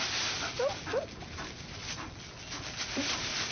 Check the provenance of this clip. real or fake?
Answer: real